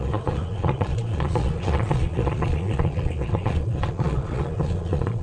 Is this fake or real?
fake